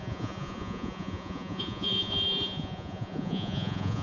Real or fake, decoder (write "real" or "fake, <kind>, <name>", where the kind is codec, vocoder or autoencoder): fake, vocoder, Vocos